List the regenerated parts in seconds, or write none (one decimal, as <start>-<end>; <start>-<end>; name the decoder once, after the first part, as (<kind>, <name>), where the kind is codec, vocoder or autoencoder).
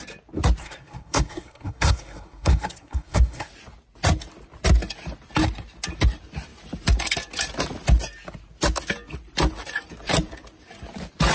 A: 0.6-3.5 (codec, SNAC)